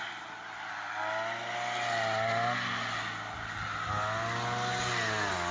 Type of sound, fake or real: real